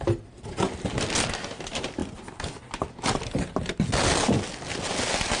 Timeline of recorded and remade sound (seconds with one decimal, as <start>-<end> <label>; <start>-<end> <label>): 0.0-5.4 recorded